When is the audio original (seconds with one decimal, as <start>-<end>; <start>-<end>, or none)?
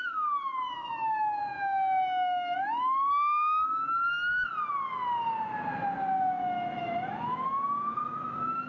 1.4-6.2